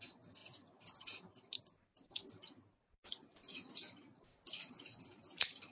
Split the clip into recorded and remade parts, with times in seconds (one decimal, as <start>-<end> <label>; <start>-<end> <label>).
0.0-5.7 remade